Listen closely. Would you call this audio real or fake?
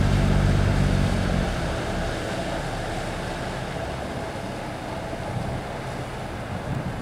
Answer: real